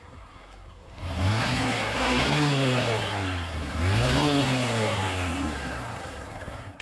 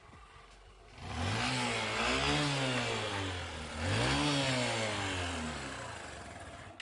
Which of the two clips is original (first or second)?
second